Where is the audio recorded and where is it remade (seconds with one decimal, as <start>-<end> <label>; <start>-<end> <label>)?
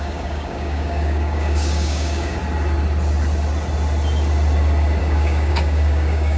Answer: 0.0-2.4 remade; 2.4-5.0 recorded; 5.0-6.4 remade